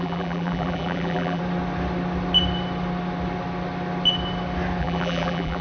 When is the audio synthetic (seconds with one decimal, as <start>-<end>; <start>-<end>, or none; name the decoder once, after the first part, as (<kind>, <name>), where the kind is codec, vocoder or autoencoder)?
0.0-1.4 (vocoder, BigVGAN v2); 4.8-5.6